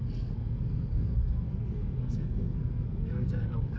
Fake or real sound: fake